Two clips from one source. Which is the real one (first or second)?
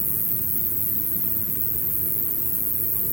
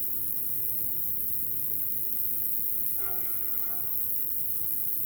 first